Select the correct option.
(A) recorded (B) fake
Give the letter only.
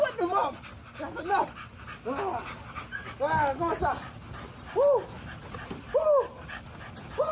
A